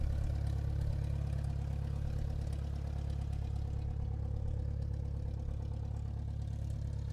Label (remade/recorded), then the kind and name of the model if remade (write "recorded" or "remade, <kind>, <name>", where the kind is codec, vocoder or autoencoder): recorded